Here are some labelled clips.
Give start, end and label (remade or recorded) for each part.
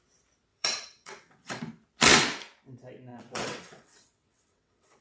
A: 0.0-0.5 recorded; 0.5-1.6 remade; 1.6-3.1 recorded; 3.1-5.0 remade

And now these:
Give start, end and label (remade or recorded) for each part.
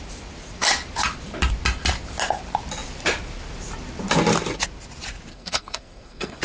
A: 0.0-5.3 recorded; 5.3-6.4 remade